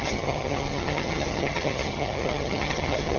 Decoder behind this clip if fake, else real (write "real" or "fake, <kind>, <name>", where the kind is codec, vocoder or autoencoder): fake, vocoder, HiFi-GAN